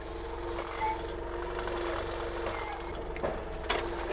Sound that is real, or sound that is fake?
real